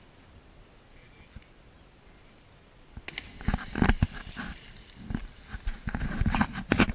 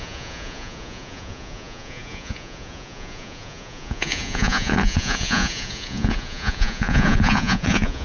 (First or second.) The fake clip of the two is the second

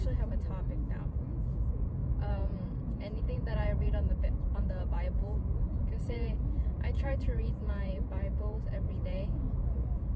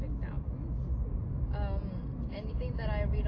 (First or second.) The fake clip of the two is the first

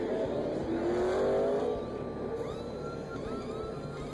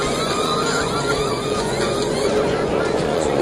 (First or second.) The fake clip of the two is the second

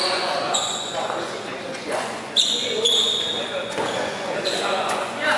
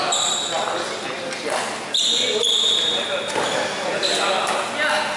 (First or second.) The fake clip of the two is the first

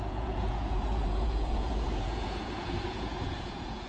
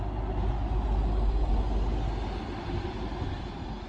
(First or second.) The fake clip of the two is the first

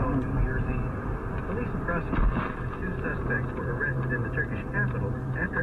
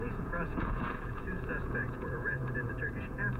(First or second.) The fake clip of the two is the second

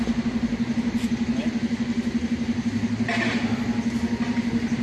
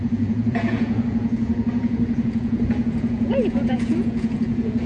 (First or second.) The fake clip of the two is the second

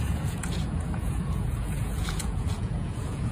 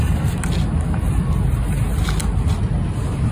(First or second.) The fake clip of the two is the first